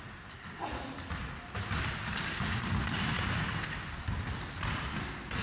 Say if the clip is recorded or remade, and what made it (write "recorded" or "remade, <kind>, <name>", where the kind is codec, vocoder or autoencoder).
recorded